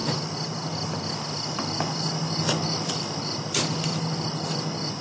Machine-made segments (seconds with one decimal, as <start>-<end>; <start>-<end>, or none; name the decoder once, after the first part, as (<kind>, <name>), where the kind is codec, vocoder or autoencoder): none